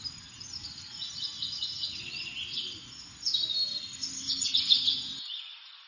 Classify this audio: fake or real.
real